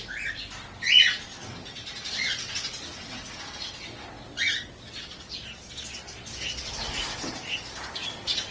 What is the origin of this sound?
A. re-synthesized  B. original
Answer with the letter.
B